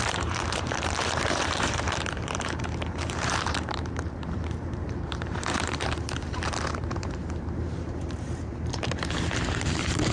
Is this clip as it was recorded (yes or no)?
no